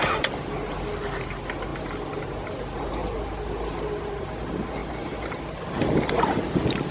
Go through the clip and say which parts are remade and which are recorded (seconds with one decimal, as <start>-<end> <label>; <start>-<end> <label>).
0.0-1.7 recorded; 1.7-2.2 remade; 2.2-4.8 recorded; 4.8-6.4 remade; 6.4-6.9 recorded